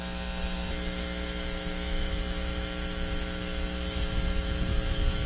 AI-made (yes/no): yes